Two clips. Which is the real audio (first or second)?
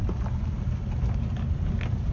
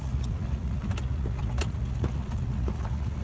first